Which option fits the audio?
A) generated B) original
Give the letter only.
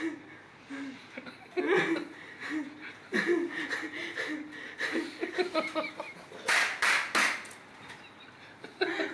B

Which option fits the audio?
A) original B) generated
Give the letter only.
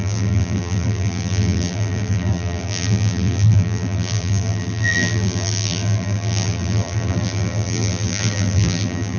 B